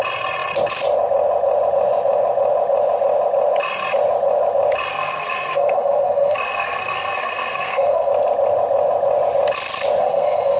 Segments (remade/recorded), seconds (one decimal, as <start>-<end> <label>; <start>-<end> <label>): 0.0-4.9 recorded; 4.9-8.1 remade; 8.1-10.0 recorded; 10.0-10.6 remade